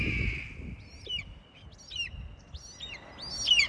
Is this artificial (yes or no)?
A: no